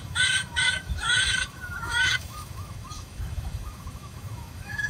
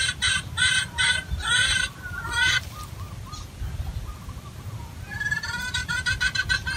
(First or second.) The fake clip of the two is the first